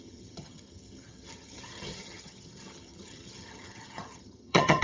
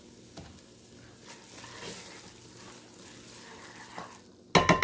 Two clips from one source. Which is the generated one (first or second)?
first